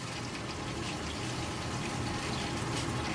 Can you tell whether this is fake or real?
real